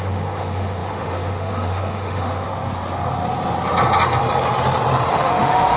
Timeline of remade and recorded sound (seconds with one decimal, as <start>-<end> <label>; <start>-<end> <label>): 0.0-2.5 remade; 2.5-5.1 recorded; 5.1-5.8 remade